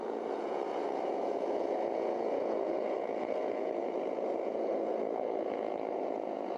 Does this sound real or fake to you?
fake